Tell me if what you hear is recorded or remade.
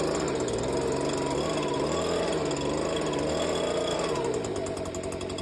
recorded